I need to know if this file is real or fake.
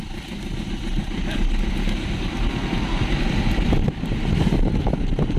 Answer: real